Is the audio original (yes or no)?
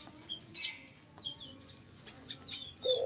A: no